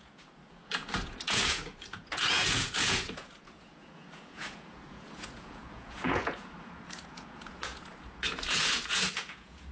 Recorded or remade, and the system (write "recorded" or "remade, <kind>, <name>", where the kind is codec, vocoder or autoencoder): remade, vocoder, Vocos